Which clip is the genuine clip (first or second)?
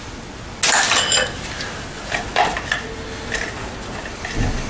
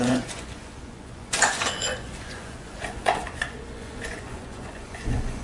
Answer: first